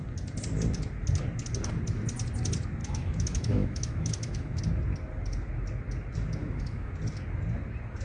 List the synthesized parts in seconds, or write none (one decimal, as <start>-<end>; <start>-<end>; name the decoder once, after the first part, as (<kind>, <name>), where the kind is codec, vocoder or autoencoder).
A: 2.8-4.6 (autoencoder, DAC-VAE); 6.4-6.9